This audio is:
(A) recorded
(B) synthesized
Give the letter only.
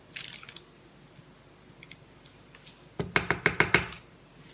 A